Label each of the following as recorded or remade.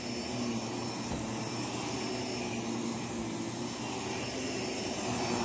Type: recorded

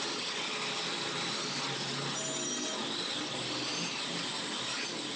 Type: recorded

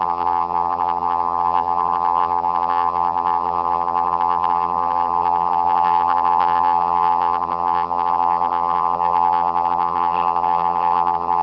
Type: remade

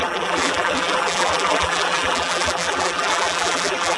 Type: remade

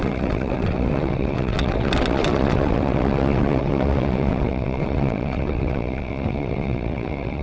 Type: remade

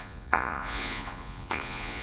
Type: remade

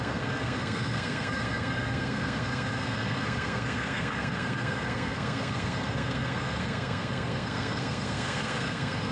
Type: remade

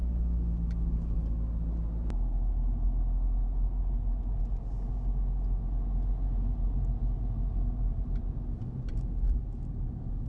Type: recorded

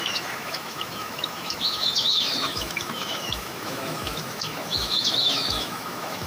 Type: remade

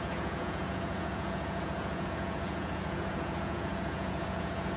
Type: remade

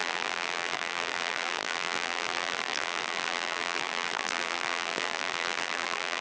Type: remade